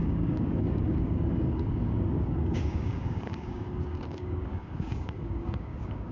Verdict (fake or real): fake